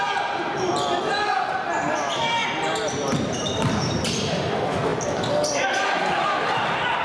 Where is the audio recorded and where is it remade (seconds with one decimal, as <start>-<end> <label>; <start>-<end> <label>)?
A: 0.0-7.0 remade